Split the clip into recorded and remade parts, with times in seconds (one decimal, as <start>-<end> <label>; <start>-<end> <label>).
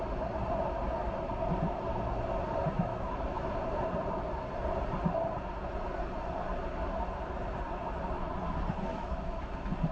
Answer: 0.0-2.9 recorded; 2.9-3.5 remade; 3.5-8.9 recorded; 8.9-9.5 remade; 9.5-9.9 recorded